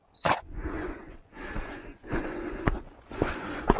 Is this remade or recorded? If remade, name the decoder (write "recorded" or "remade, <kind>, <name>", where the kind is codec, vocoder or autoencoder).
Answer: remade, vocoder, Vocos